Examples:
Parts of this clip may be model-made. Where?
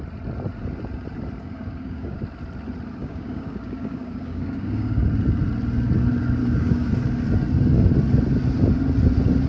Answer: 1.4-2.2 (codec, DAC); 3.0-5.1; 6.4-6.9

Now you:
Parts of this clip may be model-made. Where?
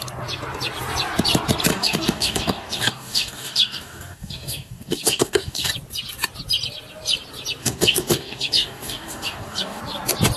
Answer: 1.7-5.7 (codec, DAC); 7.6-9.8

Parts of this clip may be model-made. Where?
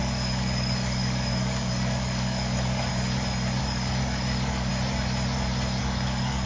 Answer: 0.0-2.9 (codec, DAC); 3.6-4.7; 5.8-6.5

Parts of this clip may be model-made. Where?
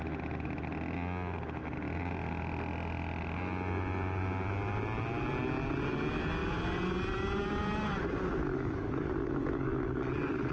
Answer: 8.5-10.1 (codec, DAC)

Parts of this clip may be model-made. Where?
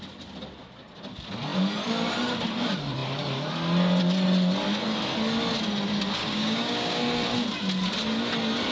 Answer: 6.2-7.0 (codec, DAC)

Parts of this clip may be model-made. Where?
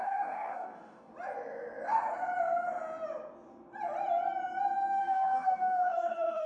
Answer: 0.0-1.1 (codec, DAC); 5.0-6.5